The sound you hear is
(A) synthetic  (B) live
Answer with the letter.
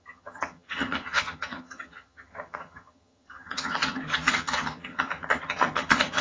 A